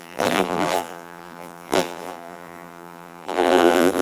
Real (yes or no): no